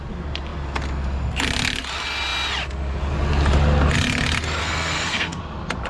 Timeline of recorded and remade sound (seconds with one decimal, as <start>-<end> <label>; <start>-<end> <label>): 0.0-4.6 recorded; 4.6-5.4 remade; 5.4-5.9 recorded